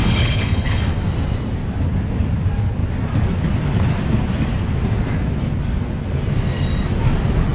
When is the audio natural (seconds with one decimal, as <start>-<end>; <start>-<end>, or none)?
0.8-7.5